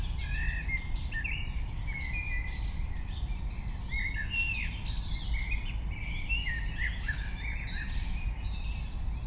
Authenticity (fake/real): real